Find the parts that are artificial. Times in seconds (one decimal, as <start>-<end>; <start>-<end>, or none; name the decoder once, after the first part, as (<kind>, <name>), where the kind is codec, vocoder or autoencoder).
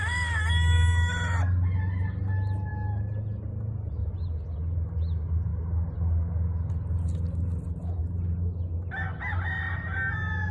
none